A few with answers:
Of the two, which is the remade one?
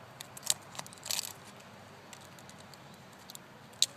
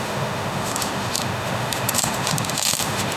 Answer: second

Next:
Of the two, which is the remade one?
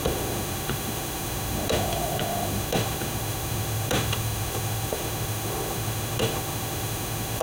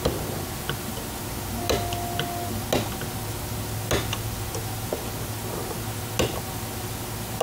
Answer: first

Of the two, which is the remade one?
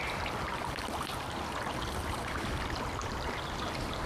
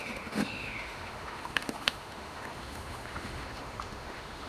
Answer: second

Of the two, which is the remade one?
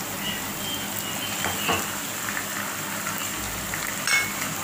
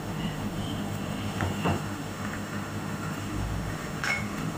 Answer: second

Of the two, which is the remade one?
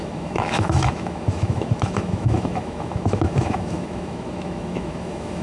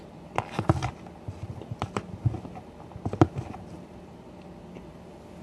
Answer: first